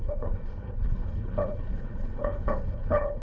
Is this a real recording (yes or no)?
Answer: no